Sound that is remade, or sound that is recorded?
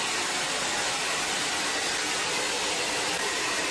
recorded